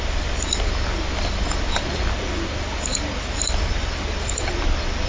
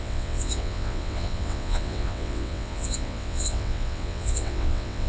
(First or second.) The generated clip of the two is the second